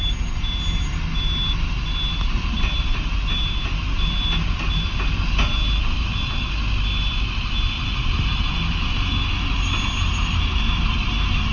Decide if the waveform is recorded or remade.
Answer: recorded